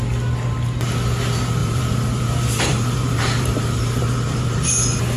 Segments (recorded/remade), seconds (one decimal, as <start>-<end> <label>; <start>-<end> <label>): 0.0-1.6 recorded; 1.6-4.7 remade; 4.7-5.2 recorded